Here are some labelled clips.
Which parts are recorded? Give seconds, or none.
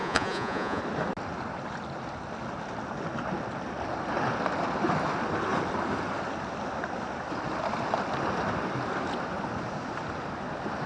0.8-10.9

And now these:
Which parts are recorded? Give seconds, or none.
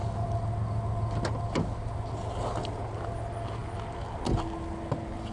0.0-5.3